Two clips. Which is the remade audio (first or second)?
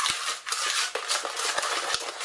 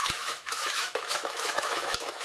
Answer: second